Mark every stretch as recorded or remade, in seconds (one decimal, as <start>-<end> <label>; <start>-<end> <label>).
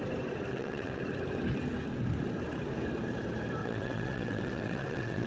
0.0-0.5 recorded; 0.5-1.0 remade; 1.0-3.6 recorded; 3.6-5.3 remade